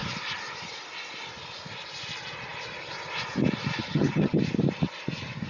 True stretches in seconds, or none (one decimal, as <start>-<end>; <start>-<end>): 0.0-3.8; 4.4-5.5